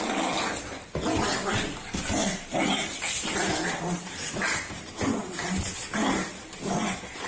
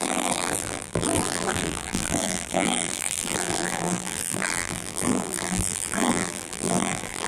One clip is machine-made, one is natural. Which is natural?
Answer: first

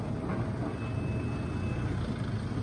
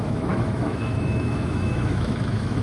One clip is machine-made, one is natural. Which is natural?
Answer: first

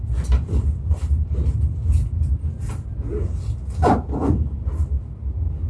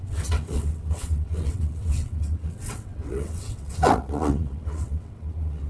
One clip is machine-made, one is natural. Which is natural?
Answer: first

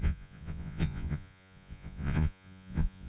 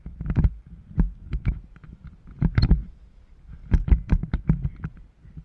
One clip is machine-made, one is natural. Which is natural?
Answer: second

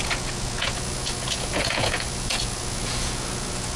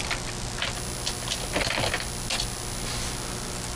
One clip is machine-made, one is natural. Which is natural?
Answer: second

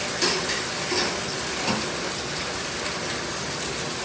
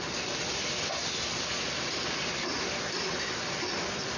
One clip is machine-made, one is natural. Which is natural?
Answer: first